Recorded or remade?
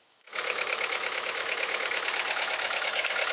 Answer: remade